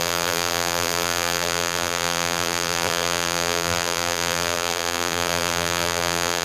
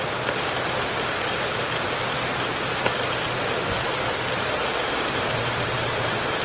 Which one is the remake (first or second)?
first